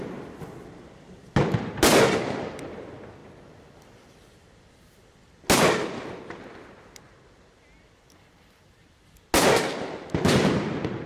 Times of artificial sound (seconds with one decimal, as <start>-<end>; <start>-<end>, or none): none